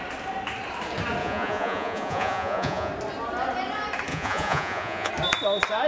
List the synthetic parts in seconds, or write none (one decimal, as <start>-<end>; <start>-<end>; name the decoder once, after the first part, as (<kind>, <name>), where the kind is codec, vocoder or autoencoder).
1.2-2.9 (vocoder, Vocos); 4.1-5.1

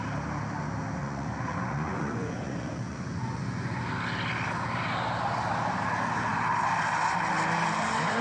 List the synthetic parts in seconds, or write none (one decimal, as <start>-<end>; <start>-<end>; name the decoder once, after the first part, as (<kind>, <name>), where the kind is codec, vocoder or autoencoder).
1.0-3.8 (vocoder, Vocos)

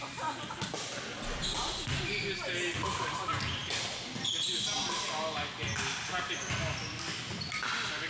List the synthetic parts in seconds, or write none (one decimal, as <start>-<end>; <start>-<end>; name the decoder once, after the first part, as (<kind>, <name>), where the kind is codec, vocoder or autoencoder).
none

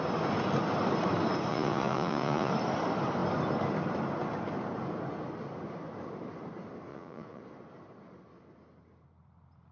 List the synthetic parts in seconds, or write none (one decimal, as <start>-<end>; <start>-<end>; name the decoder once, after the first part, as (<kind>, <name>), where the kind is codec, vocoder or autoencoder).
1.5-2.5 (vocoder, Vocos); 6.9-7.4

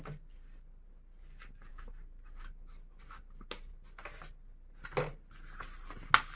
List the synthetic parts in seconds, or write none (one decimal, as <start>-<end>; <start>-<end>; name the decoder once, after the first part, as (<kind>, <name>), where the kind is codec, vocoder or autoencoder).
none

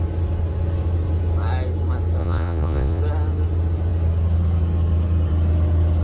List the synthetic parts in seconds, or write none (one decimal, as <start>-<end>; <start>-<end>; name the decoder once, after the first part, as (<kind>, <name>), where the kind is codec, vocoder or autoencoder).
2.2-3.0 (vocoder, Vocos)

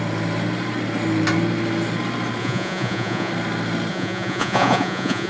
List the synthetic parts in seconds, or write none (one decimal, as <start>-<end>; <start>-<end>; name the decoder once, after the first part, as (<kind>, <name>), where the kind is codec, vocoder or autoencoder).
2.4-3.3 (vocoder, Vocos); 3.9-5.3